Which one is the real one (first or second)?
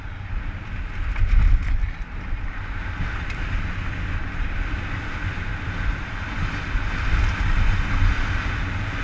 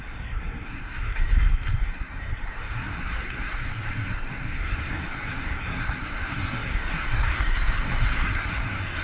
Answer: first